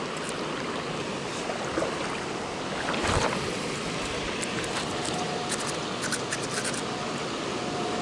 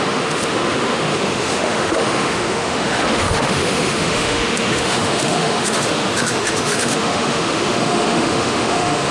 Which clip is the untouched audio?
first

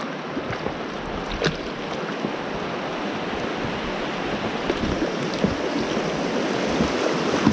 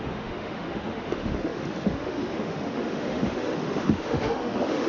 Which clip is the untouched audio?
first